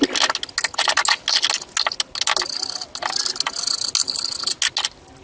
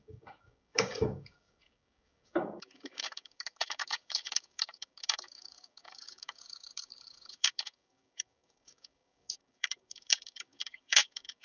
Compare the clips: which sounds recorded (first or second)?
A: first